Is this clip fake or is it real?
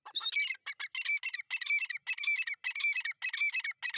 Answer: real